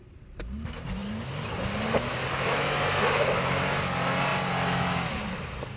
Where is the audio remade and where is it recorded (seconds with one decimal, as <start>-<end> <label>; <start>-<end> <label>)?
0.0-5.8 recorded